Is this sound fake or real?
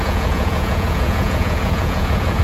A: fake